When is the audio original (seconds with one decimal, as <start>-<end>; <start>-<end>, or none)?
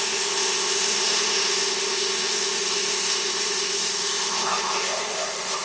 none